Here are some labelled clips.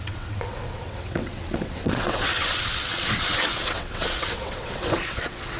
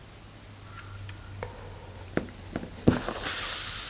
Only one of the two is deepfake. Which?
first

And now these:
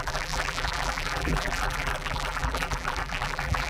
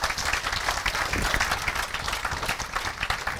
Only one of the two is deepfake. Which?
first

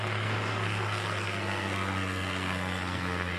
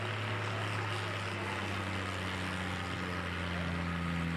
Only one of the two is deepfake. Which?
first